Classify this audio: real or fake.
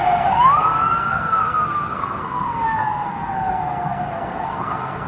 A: fake